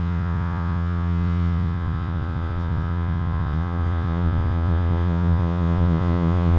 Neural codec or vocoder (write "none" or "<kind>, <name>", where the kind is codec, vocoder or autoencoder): vocoder, Vocos